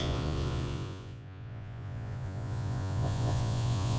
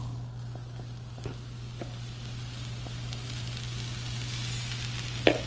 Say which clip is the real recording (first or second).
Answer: second